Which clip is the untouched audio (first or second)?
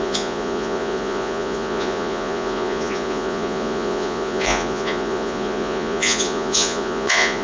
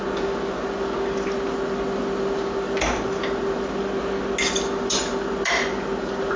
second